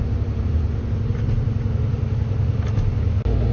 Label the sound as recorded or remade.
recorded